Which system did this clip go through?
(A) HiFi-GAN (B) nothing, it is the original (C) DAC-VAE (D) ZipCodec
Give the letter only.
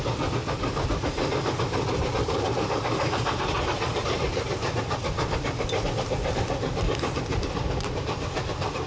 B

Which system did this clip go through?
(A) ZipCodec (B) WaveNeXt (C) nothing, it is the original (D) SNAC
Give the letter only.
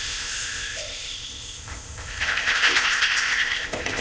A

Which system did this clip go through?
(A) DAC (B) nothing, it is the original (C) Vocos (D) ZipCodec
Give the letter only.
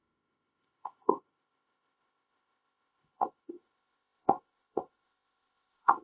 D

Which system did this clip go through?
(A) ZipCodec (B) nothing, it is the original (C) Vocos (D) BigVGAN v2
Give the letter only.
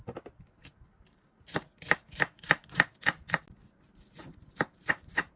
B